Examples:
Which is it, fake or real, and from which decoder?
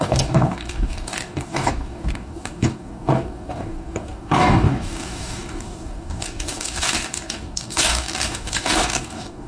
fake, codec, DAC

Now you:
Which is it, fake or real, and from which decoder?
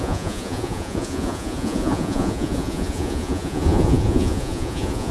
fake, vocoder, Vocos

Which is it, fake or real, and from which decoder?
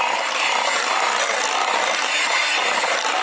real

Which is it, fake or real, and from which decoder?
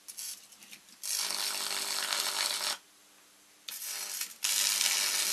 real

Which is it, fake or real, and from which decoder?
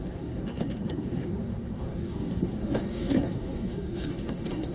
fake, codec, SNAC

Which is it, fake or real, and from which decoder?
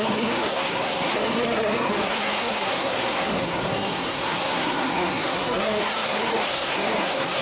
fake, codec, SNAC